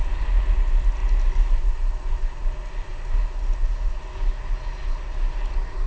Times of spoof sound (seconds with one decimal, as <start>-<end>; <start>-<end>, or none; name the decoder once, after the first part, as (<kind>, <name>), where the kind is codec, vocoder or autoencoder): none